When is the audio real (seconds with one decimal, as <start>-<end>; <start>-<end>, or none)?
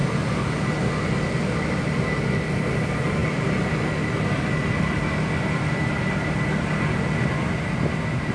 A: 0.0-8.3